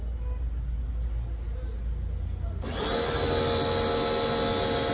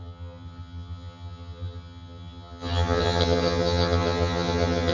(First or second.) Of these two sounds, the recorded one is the first